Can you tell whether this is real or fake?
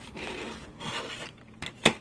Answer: real